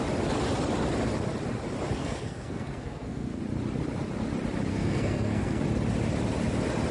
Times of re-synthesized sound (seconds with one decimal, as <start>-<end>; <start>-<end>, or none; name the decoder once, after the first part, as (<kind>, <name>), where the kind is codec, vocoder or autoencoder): 2.0-3.4 (codec, SNAC); 4.7-5.6